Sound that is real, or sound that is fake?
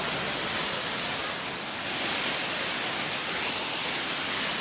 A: real